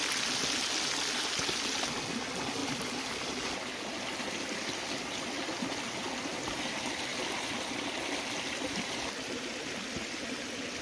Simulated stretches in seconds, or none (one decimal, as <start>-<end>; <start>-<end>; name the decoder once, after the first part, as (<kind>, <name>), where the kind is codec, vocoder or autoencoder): none